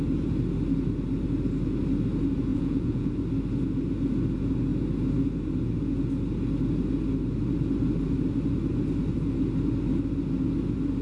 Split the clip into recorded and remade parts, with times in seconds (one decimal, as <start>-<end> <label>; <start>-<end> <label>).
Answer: 0.0-2.5 recorded; 2.5-3.1 remade; 3.1-11.0 recorded